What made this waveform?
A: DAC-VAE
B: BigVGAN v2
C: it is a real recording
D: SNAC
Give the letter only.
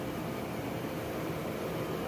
C